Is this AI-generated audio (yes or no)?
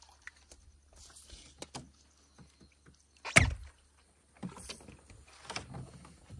no